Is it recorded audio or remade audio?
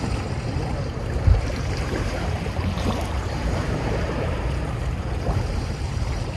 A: remade